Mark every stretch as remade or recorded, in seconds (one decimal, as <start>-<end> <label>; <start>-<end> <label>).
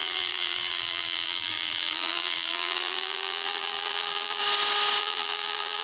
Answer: 0.0-4.4 remade; 4.4-5.0 recorded; 5.0-5.8 remade